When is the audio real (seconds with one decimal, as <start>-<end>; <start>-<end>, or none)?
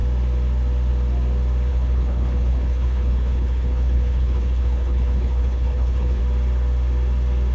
0.0-1.7; 6.2-7.5